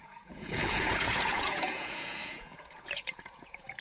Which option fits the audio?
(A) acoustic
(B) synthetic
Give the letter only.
B